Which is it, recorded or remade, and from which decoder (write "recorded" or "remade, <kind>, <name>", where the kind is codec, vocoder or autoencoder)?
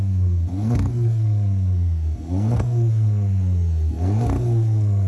remade, codec, SNAC